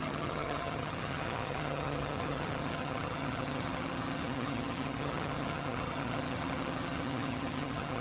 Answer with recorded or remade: remade